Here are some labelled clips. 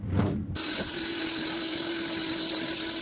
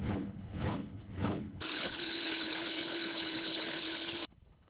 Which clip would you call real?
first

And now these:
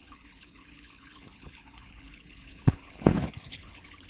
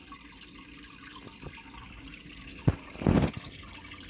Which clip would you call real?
second